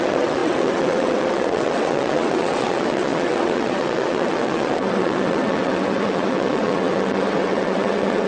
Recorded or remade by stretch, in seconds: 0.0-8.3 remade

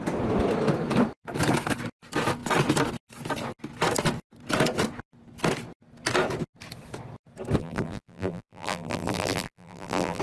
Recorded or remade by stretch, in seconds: 0.0-7.6 recorded; 7.6-10.2 remade

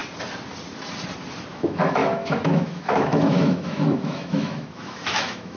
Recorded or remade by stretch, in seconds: 0.0-1.5 recorded; 1.5-5.6 remade

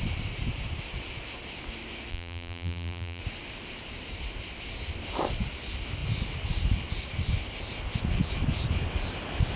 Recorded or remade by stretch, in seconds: 0.0-2.1 recorded; 2.1-3.2 remade; 3.2-9.6 recorded

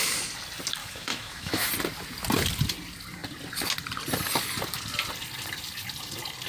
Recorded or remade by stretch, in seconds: 0.0-0.8 recorded; 0.8-1.7 remade; 1.7-6.5 recorded